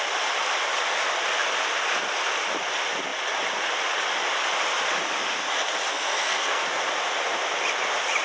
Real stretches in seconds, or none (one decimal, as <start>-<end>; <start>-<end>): 0.0-5.9; 6.6-8.2